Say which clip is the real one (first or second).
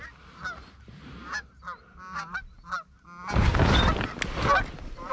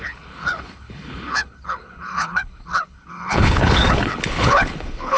first